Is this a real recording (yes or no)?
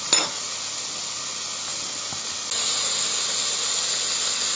yes